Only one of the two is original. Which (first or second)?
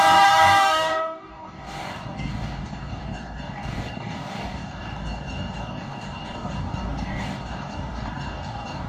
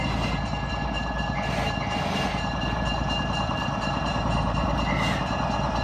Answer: second